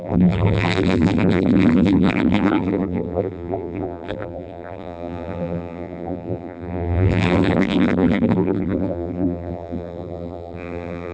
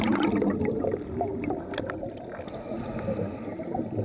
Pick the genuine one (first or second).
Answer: second